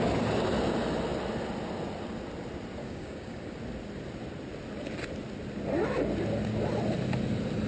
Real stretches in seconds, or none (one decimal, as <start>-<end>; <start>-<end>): 0.0-2.8; 3.5-7.7